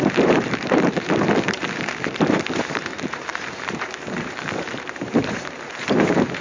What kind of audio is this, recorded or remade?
remade